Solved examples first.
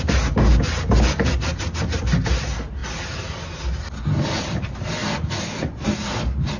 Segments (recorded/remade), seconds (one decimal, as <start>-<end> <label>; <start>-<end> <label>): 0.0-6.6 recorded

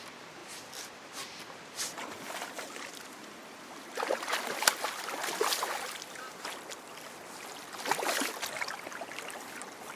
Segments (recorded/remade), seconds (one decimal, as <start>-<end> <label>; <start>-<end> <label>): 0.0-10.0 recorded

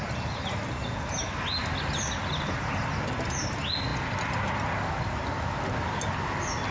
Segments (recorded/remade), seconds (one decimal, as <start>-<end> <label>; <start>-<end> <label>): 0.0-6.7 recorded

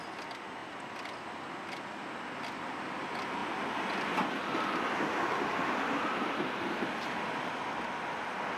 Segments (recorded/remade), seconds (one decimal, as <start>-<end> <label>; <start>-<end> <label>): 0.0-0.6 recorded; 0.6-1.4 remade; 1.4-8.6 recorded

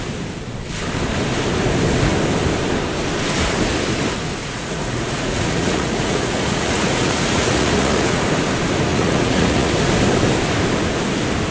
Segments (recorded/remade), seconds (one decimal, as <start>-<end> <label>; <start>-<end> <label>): 0.0-4.4 recorded; 4.4-8.2 remade; 8.2-8.9 recorded; 8.9-9.7 remade; 9.7-11.5 recorded

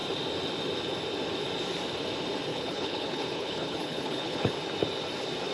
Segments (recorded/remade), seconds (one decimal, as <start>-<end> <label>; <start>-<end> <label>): 0.0-2.5 recorded; 2.5-4.5 remade; 4.5-5.5 recorded